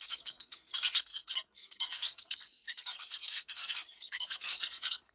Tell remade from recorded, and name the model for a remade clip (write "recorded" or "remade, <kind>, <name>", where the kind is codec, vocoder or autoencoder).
remade, codec, SNAC